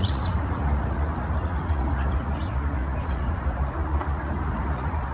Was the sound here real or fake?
fake